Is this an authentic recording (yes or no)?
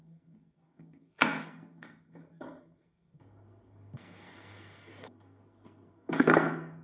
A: no